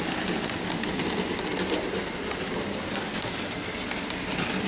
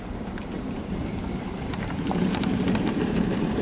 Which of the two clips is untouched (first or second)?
first